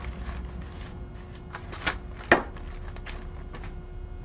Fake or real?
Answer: real